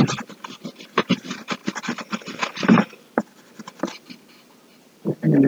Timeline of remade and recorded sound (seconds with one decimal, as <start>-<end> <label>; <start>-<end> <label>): 0.0-5.5 recorded